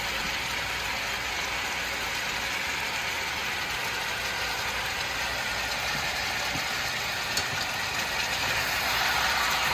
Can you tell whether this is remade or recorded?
recorded